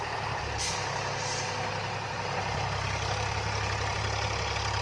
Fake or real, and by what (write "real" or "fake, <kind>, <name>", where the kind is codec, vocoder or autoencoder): real